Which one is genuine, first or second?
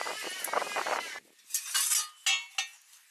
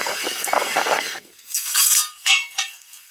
first